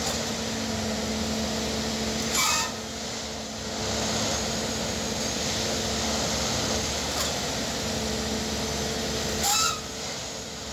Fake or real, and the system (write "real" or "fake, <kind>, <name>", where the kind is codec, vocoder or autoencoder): real